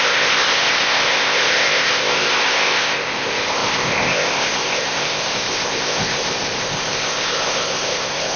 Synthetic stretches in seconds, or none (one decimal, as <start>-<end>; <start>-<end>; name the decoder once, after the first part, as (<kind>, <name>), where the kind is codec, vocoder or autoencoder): 0.0-8.4 (codec, ZipCodec)